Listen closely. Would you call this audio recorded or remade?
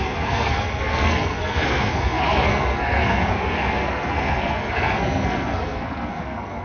remade